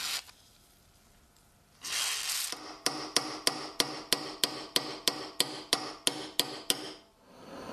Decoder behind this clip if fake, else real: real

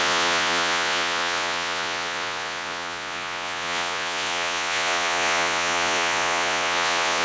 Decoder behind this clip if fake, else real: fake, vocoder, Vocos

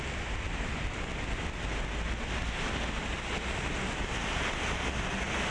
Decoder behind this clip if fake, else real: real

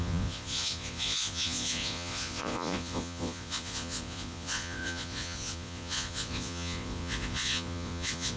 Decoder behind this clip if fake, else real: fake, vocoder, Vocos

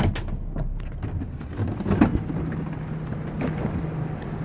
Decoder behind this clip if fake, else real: real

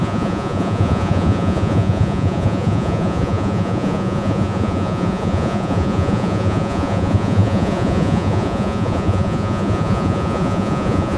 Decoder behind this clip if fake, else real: fake, vocoder, Vocos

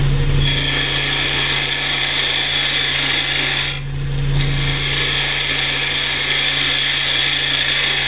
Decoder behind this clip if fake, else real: real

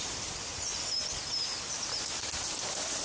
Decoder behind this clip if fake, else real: real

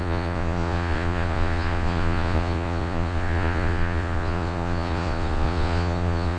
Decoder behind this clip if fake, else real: fake, vocoder, Vocos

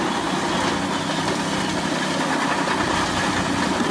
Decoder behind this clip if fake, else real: real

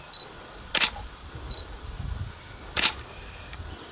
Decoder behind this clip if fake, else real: real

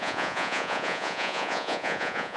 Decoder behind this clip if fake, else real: fake, vocoder, Vocos